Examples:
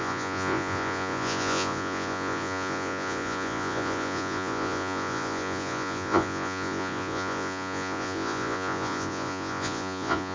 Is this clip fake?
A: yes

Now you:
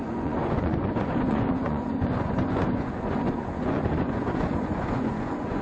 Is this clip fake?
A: yes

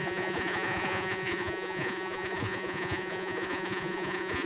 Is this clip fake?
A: yes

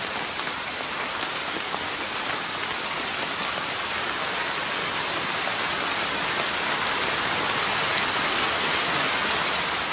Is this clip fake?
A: no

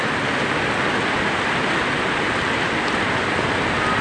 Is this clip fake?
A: no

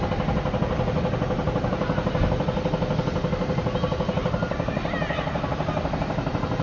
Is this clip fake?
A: no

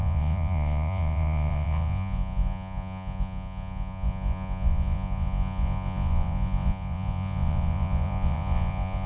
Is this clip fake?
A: yes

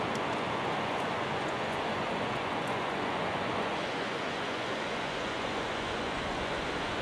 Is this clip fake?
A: yes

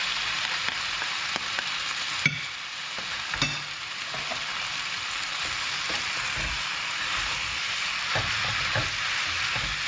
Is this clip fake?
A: no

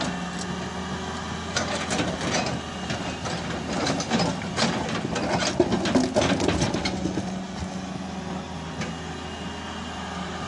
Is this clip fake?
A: no